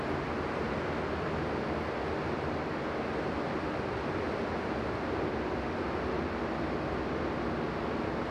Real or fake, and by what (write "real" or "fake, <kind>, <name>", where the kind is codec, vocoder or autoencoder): real